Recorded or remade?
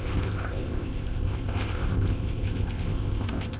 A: remade